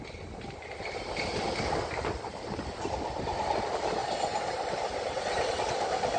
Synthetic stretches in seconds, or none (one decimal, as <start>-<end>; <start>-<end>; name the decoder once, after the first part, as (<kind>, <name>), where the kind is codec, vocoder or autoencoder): 4.0-5.2 (vocoder, BigVGAN v2)